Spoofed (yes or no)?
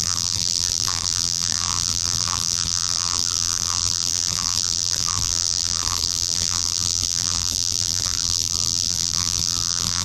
yes